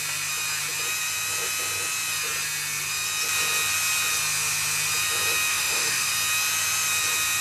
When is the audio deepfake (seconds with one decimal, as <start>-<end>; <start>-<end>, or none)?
5.5-6.1